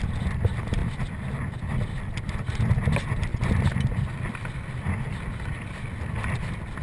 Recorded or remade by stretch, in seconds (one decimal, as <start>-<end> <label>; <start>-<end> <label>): 0.0-6.8 recorded